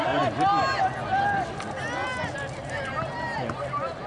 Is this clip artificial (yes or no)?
no